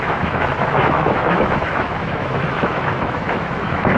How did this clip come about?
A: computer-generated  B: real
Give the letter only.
A